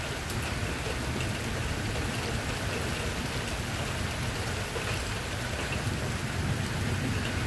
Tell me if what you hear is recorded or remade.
recorded